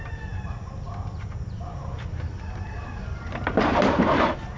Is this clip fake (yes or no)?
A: no